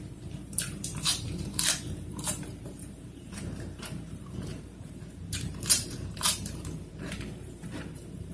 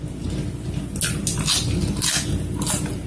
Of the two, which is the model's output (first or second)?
first